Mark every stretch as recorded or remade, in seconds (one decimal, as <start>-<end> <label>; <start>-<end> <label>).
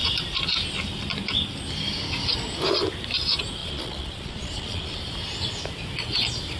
0.0-3.6 recorded; 3.6-5.0 remade; 5.0-6.6 recorded